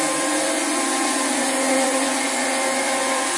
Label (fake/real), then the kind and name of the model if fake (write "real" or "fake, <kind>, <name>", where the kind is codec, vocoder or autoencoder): fake, vocoder, Vocos